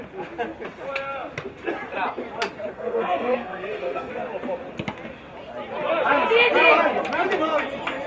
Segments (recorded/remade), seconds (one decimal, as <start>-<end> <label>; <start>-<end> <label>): 0.0-2.7 recorded; 2.7-4.1 remade; 4.1-8.1 recorded